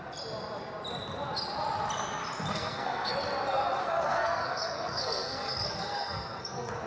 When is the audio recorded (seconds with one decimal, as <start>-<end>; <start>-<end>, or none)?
0.0-2.5; 3.1-3.8

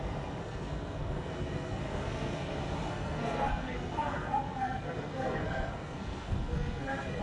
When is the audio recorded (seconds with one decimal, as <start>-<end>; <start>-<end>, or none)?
0.0-0.4; 2.5-2.9

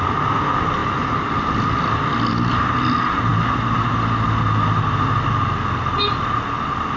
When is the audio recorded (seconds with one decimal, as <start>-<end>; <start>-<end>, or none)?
0.0-7.0

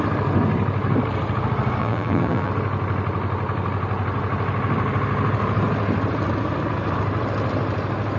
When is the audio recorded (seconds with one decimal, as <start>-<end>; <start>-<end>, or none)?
0.0-1.8; 2.5-8.2